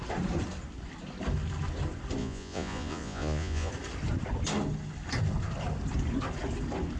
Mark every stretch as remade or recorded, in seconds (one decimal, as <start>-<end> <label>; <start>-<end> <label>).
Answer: 0.0-2.2 recorded; 2.2-3.7 remade; 3.7-7.0 recorded